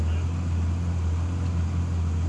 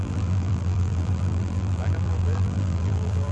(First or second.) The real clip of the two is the first